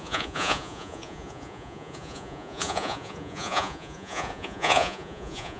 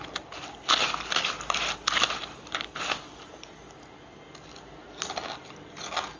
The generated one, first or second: first